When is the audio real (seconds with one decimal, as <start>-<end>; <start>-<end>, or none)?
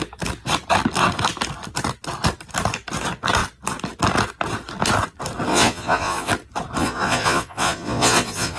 0.0-5.5; 6.3-6.8